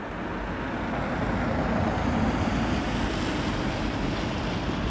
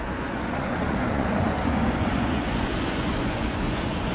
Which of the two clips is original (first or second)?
first